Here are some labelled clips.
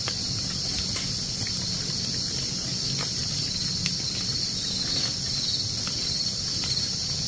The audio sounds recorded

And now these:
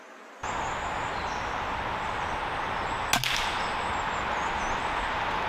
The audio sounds recorded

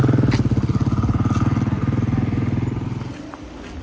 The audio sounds recorded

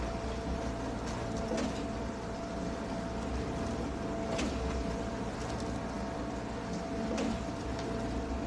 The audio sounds recorded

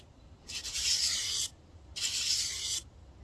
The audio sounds recorded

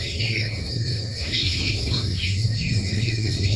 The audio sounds remade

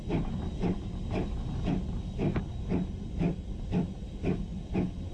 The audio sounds recorded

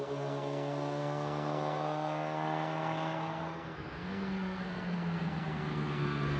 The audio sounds remade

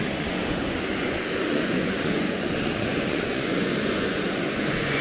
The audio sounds remade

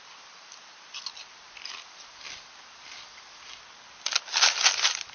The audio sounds recorded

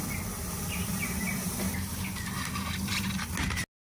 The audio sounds recorded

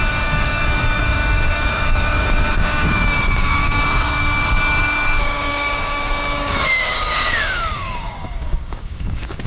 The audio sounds remade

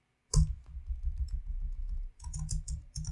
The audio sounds recorded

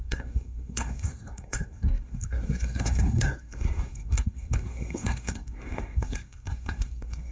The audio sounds remade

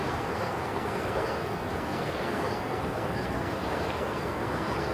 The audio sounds remade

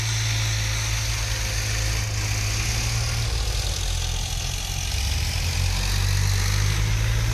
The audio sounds recorded